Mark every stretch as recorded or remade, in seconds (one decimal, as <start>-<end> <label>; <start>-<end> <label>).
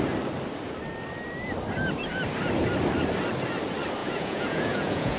0.0-4.0 recorded; 4.0-5.2 remade